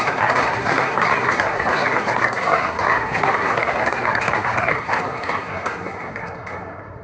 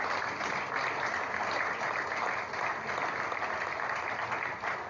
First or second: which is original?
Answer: second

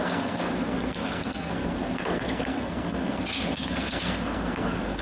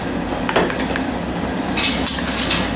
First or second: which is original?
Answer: second